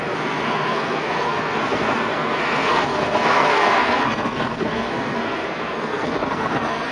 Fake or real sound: fake